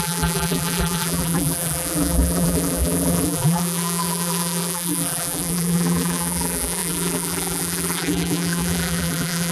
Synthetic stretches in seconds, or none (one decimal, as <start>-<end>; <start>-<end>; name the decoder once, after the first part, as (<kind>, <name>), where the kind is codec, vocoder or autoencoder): 0.0-9.5 (vocoder, BigVGAN v2)